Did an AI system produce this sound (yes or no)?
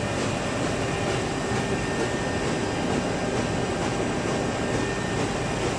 no